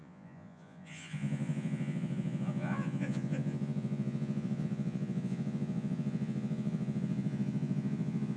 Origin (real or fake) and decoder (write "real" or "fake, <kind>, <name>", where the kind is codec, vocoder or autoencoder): fake, vocoder, Vocos